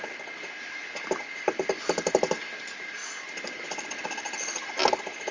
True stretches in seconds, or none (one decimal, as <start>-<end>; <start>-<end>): 0.0-5.3